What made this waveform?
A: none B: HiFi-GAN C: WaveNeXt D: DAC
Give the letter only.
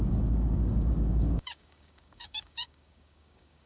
D